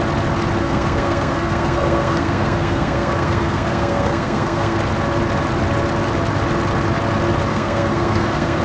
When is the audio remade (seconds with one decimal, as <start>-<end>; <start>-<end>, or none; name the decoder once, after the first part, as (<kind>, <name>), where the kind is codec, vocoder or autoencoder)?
0.6-4.8 (codec, SNAC); 7.5-8.6